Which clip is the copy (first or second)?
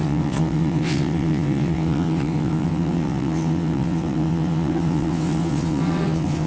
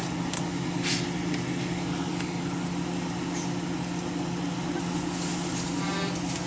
first